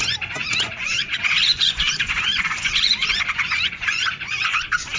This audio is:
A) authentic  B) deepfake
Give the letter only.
B